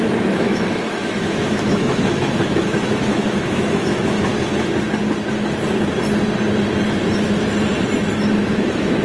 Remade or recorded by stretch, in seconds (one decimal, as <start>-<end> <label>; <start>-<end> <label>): 0.0-4.3 remade; 4.3-8.4 recorded; 8.4-9.0 remade